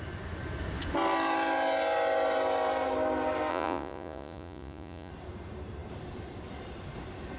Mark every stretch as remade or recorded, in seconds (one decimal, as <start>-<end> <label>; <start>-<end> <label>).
0.0-3.5 recorded; 3.5-5.1 remade; 5.1-7.4 recorded